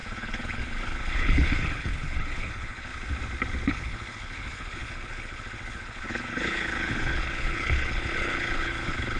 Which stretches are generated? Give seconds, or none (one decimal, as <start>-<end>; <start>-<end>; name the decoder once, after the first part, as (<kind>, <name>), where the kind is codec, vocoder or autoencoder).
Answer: 0.0-2.9 (codec, HILCodec); 3.7-9.2